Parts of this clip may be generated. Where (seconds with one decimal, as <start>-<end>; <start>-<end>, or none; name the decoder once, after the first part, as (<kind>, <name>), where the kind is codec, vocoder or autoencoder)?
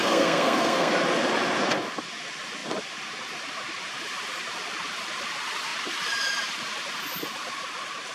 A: 0.0-0.9 (codec, SNAC)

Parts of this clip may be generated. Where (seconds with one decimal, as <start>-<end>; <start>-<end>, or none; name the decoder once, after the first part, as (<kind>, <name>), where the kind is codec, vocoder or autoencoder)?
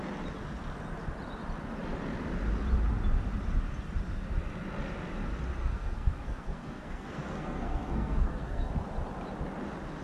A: 5.6-8.7 (codec, SNAC)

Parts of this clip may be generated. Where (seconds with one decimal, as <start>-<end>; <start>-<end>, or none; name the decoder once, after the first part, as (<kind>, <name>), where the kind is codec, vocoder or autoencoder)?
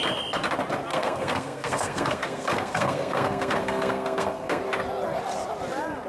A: 0.9-4.6 (codec, SNAC)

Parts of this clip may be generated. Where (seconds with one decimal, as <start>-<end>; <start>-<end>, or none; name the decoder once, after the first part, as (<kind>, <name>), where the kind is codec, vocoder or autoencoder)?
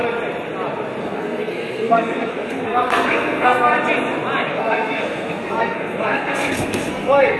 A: 1.0-3.7 (codec, SNAC); 4.5-7.4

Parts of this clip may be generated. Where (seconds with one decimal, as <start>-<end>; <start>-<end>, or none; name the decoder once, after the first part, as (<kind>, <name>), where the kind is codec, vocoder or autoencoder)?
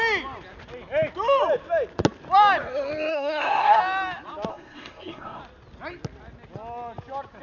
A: 3.1-3.8 (codec, SNAC); 4.5-5.4